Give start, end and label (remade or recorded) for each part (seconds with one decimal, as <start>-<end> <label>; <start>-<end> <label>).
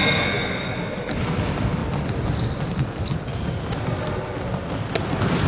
0.0-5.5 recorded